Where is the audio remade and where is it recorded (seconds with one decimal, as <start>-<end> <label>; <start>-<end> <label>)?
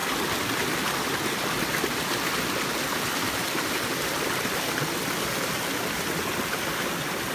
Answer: 0.0-7.3 recorded